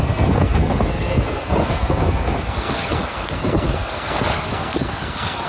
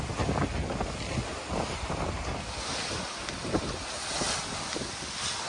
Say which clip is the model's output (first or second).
first